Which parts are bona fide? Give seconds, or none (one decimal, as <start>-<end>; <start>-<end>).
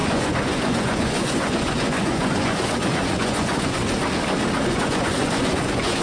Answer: 3.8-4.7